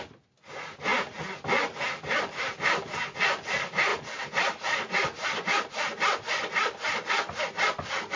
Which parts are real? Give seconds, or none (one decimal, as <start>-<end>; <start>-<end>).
0.0-8.2